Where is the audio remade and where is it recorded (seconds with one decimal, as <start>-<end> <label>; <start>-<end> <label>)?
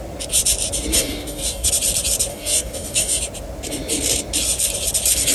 0.0-0.9 recorded; 0.9-1.7 remade; 1.7-2.3 recorded; 2.3-3.2 remade; 3.2-5.3 recorded